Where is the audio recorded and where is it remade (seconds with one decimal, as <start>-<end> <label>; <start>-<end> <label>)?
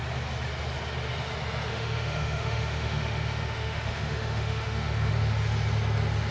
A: 0.0-1.7 recorded; 1.7-5.1 remade; 5.1-6.3 recorded